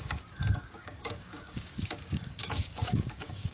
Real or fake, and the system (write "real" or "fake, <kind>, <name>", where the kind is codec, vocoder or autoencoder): fake, codec, DAC